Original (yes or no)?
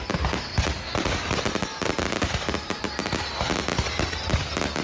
yes